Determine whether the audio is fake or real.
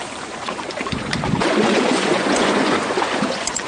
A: fake